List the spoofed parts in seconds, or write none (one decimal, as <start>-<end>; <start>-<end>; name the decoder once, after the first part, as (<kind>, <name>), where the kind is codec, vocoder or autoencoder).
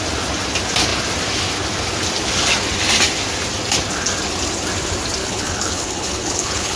5.2-6.8 (codec, HILCodec)